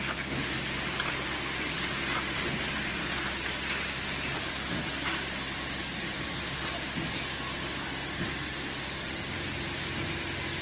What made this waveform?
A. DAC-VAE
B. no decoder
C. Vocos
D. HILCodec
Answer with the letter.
B